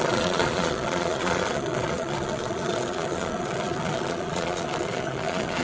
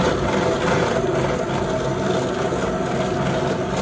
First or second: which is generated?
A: first